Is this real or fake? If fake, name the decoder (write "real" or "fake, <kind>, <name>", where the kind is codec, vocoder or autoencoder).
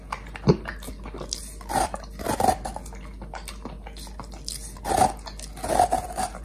real